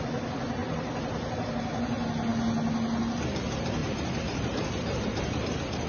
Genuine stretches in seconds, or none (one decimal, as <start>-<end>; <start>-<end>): 0.0-0.6; 1.5-3.8; 5.5-5.9